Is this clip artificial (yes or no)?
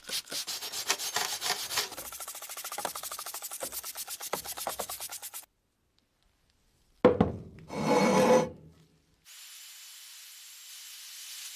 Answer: no